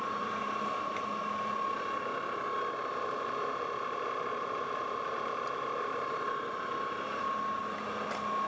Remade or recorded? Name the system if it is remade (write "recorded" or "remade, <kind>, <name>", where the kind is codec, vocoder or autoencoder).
recorded